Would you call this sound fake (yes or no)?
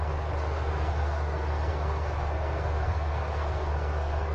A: yes